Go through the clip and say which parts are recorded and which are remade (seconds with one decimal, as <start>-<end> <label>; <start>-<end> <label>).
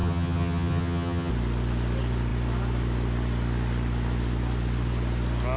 0.0-1.3 remade; 1.3-5.6 recorded